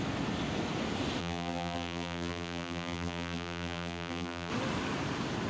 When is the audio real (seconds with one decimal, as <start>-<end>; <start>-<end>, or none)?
0.0-1.2; 4.5-5.5